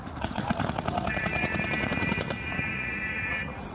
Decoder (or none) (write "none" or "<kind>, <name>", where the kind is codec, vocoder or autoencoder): vocoder, Vocos